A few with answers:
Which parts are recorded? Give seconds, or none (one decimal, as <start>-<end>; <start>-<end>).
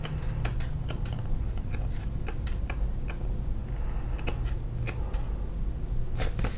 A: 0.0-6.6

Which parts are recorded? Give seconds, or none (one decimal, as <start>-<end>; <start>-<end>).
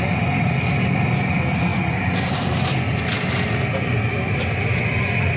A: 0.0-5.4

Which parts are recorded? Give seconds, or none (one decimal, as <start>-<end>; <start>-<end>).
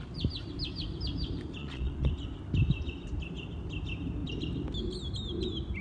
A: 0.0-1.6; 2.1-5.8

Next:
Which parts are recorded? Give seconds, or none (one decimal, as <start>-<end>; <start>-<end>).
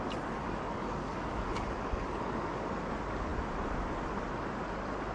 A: 0.0-0.4; 2.9-5.1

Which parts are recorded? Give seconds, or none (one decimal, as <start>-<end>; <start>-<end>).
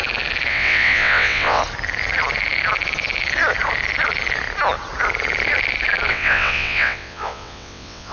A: 0.0-0.5; 1.6-6.1